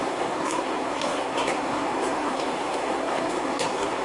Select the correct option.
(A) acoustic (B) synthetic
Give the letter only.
B